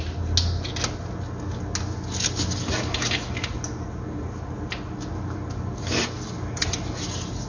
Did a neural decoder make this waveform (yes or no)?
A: no